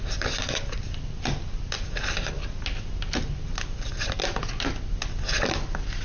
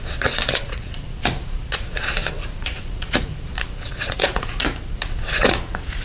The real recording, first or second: first